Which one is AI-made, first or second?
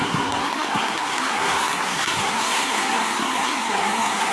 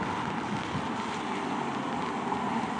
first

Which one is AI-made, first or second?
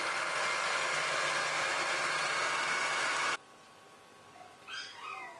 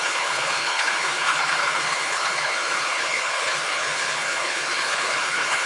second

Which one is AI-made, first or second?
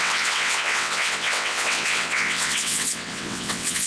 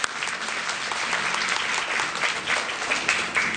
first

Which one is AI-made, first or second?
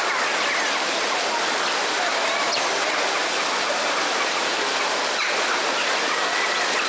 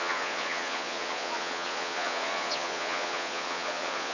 second